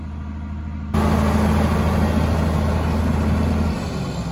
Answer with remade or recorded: recorded